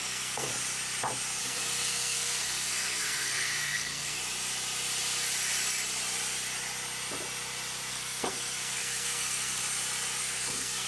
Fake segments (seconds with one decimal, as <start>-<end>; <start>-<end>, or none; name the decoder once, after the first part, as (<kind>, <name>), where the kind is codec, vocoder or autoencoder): 0.0-0.5 (codec, SNAC); 1.4-4.2; 7.9-9.6; 10.2-10.9